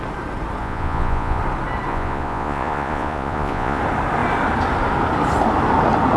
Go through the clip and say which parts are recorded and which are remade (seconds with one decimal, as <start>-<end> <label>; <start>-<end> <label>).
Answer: 0.0-0.6 recorded; 0.6-1.4 remade; 1.4-1.9 recorded; 1.9-3.8 remade; 3.8-6.2 recorded